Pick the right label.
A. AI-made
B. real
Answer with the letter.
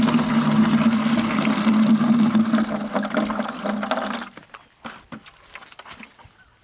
B